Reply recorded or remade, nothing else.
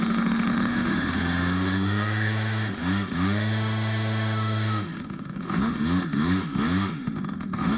remade